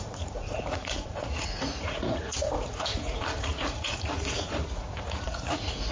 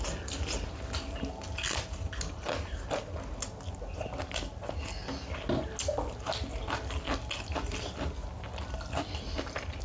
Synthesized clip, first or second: first